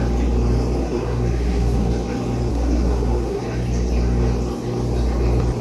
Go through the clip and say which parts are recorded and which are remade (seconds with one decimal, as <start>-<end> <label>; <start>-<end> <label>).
0.0-0.8 recorded; 0.8-1.9 remade; 1.9-2.5 recorded; 2.5-3.4 remade; 3.4-5.6 recorded